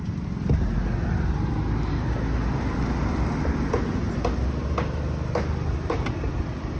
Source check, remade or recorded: recorded